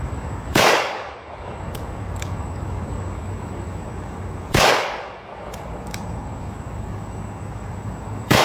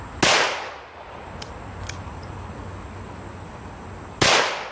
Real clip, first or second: second